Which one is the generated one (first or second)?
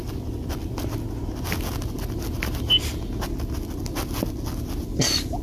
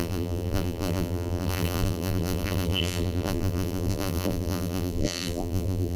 second